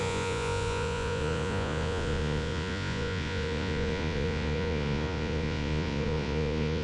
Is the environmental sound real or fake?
fake